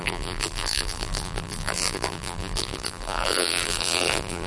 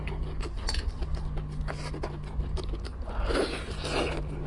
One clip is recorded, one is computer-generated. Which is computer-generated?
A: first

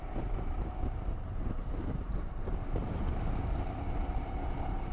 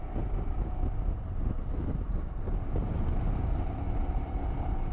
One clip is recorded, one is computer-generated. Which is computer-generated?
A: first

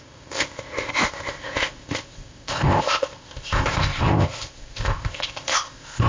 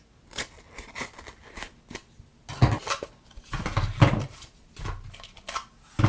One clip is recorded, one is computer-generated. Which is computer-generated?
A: first